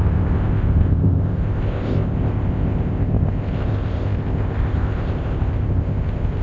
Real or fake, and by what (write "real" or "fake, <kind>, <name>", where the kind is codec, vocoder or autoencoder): fake, codec, ZipCodec